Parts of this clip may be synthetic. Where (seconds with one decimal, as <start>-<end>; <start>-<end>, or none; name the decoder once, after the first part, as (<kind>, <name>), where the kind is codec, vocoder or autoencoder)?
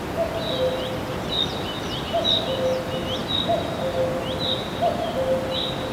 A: none